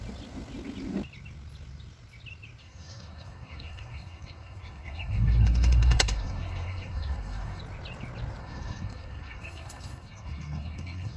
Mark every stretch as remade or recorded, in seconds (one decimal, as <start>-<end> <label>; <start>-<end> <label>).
0.0-2.6 recorded; 2.6-7.6 remade; 7.6-8.4 recorded; 8.4-11.2 remade